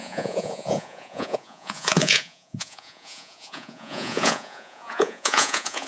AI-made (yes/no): yes